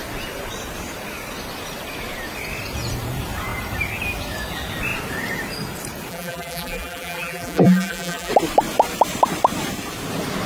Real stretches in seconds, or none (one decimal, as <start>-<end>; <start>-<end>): 0.0-6.1; 8.3-10.5

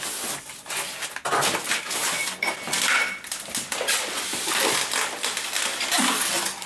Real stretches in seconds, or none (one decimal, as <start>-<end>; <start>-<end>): 0.0-6.7